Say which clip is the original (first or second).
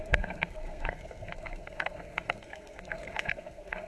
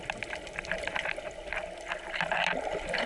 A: second